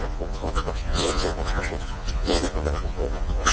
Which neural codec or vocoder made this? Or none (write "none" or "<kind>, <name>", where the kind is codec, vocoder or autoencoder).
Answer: vocoder, Vocos